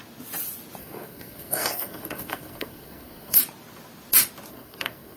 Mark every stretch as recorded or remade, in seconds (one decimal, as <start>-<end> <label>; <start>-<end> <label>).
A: 0.0-0.8 recorded; 0.8-3.4 remade; 3.4-4.5 recorded; 4.5-5.2 remade